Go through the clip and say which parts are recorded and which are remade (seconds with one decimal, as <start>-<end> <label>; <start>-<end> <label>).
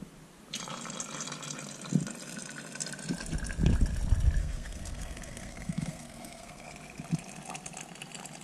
0.0-4.4 recorded; 4.4-6.7 remade; 6.7-8.4 recorded